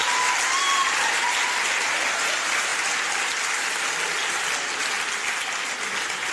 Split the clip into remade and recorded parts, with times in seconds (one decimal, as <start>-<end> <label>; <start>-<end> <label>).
0.0-2.3 recorded; 2.3-2.7 remade; 2.7-6.3 recorded